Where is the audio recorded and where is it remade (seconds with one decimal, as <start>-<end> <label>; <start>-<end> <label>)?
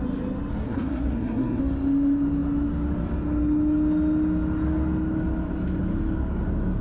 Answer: 0.0-0.5 recorded; 0.5-1.6 remade; 1.6-6.8 recorded